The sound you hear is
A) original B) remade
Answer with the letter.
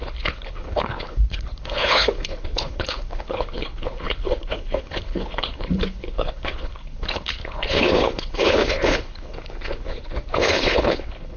B